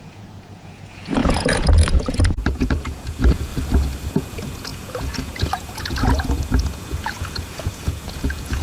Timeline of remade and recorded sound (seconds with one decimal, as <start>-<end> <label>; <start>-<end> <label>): 0.0-3.5 remade; 3.5-4.1 recorded; 4.1-8.6 remade